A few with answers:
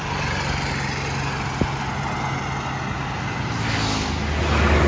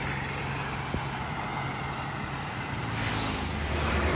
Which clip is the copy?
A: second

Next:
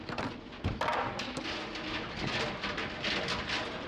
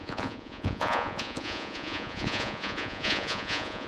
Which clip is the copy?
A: second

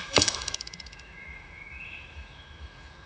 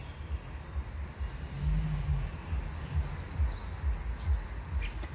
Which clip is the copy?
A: first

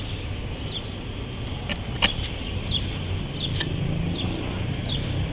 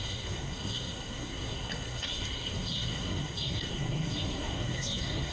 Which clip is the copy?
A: second